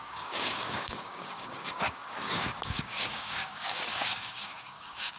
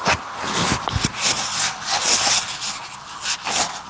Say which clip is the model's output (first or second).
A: first